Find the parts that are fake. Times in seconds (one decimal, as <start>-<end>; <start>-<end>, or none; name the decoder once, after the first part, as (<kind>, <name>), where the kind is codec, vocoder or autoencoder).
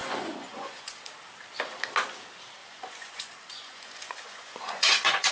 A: 0.0-1.0 (vocoder, Vocos); 2.6-5.3